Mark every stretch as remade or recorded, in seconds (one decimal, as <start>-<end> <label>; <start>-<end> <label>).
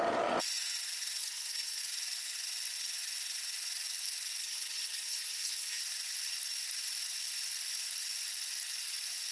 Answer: 0.0-1.2 recorded; 1.2-1.8 remade; 1.8-4.4 recorded; 4.4-5.8 remade; 5.8-9.3 recorded